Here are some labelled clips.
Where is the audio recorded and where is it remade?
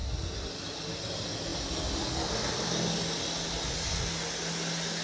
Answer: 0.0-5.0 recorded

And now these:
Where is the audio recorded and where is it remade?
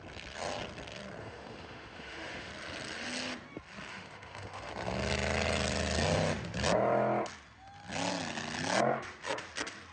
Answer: 0.0-1.2 recorded; 1.2-2.5 remade; 2.5-3.9 recorded; 3.9-4.7 remade; 4.7-9.9 recorded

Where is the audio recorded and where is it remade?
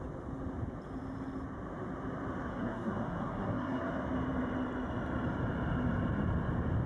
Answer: 0.0-2.5 recorded; 2.5-3.9 remade; 3.9-6.9 recorded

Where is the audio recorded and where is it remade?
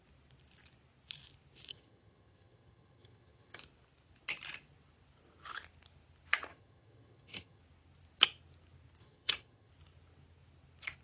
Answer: 0.0-1.7 recorded; 1.7-3.6 remade; 3.6-6.5 recorded; 6.5-7.6 remade; 7.6-9.0 recorded; 9.0-9.7 remade; 9.7-11.0 recorded